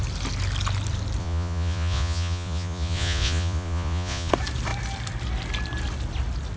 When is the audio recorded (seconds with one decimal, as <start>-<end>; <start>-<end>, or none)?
0.0-1.2; 4.3-6.6